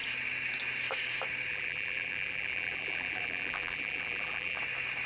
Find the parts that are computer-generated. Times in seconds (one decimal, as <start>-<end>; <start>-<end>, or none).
1.5-4.6